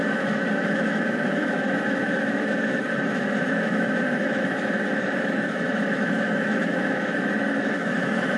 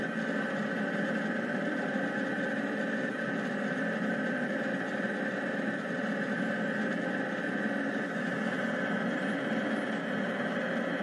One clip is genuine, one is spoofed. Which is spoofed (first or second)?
first